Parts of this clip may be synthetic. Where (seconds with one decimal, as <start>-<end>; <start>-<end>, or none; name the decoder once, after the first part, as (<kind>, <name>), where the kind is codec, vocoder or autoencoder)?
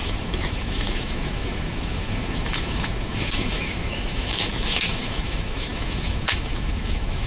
0.0-7.3 (autoencoder, DAC-VAE)